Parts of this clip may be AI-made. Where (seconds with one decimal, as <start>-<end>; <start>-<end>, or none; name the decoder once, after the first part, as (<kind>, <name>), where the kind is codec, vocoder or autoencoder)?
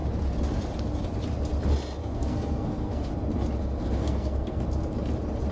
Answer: 2.0-3.1 (codec, SNAC); 3.6-4.6